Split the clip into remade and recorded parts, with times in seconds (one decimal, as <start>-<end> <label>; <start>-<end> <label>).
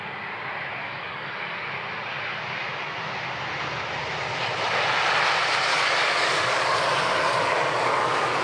0.0-0.8 recorded; 0.8-1.7 remade; 1.7-5.7 recorded; 5.7-8.4 remade